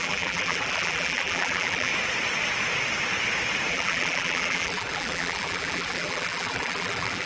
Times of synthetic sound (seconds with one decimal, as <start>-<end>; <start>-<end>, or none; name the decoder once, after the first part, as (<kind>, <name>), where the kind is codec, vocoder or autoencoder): 0.0-1.9 (vocoder, BigVGAN v2); 3.7-7.3